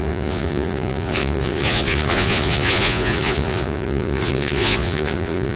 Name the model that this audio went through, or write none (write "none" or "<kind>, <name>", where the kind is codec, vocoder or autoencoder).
vocoder, Vocos